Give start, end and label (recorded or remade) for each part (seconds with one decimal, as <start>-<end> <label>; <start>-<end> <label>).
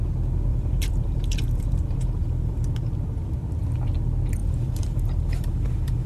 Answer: 0.0-0.5 recorded; 0.5-2.7 remade; 2.7-4.4 recorded; 4.4-6.1 remade